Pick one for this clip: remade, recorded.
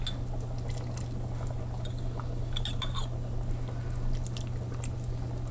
recorded